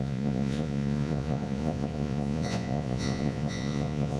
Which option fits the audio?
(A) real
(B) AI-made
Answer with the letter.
B